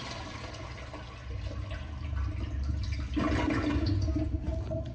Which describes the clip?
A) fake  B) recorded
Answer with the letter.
B